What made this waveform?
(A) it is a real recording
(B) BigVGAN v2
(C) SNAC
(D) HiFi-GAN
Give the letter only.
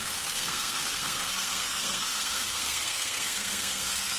C